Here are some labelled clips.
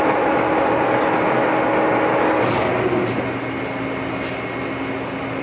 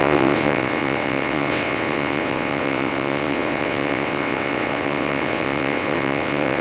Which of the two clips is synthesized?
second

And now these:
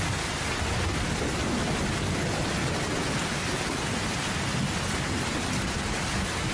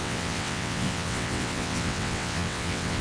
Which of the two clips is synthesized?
second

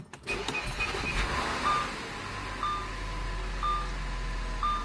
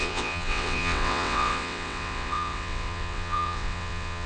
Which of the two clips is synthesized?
second